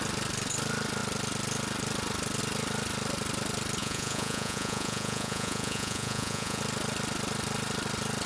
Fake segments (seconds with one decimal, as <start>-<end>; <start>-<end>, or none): 3.8-6.6